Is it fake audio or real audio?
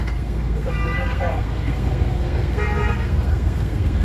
fake